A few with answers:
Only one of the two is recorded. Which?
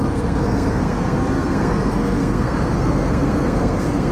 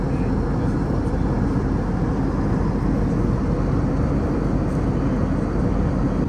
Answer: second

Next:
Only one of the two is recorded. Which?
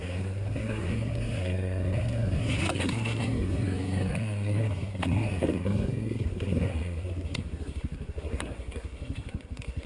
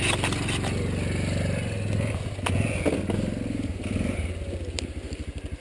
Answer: second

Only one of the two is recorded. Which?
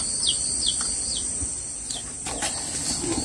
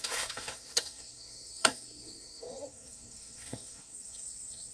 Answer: first